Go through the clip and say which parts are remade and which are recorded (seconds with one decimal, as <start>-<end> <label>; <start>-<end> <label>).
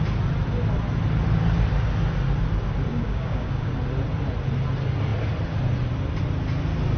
0.0-2.9 recorded; 2.9-3.7 remade; 3.7-7.0 recorded